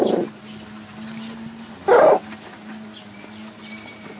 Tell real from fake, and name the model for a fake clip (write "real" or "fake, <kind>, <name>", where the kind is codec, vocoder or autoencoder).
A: real